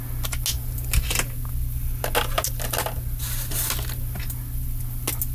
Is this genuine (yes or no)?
yes